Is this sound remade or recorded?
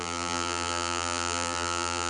remade